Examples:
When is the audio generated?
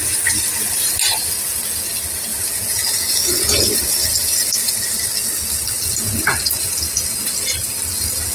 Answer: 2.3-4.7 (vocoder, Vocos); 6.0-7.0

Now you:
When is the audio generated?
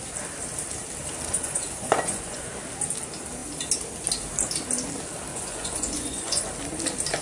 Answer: 1.3-2.5 (vocoder, Vocos); 5.3-6.4